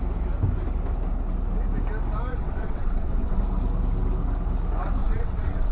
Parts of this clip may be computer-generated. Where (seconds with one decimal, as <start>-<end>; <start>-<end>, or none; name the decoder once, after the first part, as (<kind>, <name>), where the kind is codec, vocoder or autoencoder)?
2.3-3.4 (vocoder, WaveNeXt); 5.0-5.7